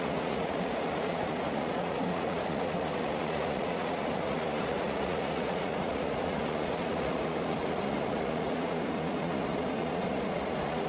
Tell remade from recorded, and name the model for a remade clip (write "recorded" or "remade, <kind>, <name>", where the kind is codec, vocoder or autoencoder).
remade, vocoder, Vocos